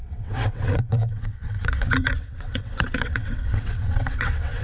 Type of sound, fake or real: fake